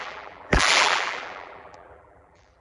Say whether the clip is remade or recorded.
remade